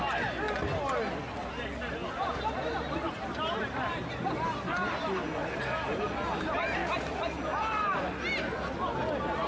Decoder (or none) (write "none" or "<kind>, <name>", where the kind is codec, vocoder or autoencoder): none